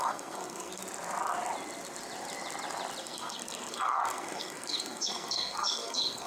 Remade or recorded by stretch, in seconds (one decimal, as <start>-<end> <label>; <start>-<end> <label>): 0.0-0.8 remade; 0.8-3.0 recorded; 3.0-6.3 remade